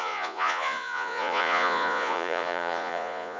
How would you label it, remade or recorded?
remade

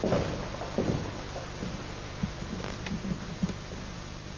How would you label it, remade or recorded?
recorded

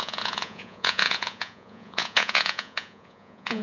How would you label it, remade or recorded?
remade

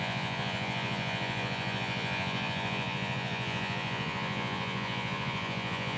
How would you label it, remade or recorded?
remade